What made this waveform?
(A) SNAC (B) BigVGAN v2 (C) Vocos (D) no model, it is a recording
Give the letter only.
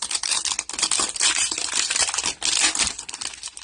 D